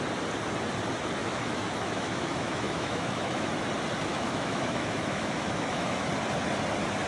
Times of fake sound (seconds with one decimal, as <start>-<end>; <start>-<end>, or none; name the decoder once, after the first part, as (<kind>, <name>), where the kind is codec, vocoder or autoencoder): 1.2-3.5 (autoencoder, DAC-VAE); 4.1-6.1

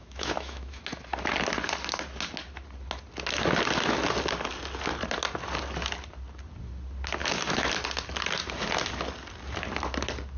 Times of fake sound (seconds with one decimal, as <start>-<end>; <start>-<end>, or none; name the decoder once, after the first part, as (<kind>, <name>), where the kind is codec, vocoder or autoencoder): 0.0-0.8 (autoencoder, DAC-VAE); 7.2-7.7

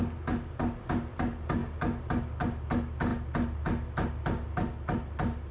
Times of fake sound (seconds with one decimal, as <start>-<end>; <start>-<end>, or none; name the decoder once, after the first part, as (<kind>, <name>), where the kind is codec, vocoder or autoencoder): none

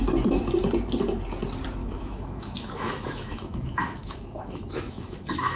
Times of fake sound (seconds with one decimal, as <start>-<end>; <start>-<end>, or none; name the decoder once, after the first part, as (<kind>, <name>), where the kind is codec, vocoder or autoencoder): 1.8-5.6 (autoencoder, DAC-VAE)

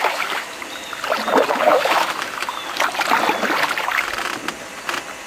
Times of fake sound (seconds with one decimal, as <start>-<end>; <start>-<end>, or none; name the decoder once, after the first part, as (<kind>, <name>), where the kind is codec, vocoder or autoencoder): 0.0-0.6 (autoencoder, DAC-VAE); 1.5-2.6

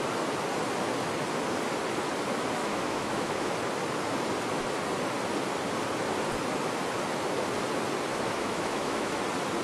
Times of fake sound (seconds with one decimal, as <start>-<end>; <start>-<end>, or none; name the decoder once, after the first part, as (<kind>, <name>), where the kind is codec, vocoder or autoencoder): 2.6-3.5 (autoencoder, DAC-VAE); 8.1-9.2